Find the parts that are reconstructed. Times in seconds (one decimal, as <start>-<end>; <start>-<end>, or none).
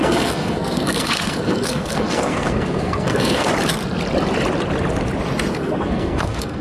0.0-3.5; 5.5-6.6